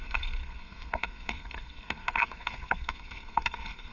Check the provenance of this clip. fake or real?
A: fake